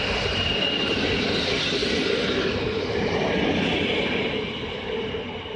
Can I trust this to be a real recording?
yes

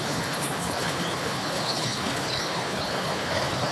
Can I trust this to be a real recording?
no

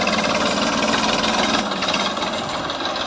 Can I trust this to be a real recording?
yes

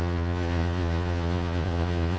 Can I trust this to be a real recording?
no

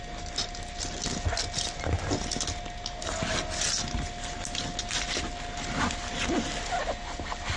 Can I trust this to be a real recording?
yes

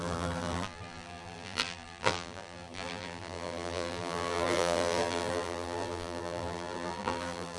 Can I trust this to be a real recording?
no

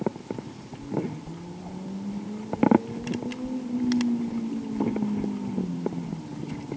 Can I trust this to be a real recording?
yes